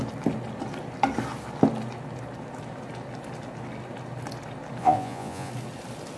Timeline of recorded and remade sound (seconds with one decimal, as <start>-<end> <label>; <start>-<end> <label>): 0.0-4.8 recorded; 4.8-5.5 remade; 5.5-6.2 recorded